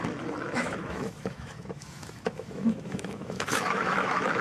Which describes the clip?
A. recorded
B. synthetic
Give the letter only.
B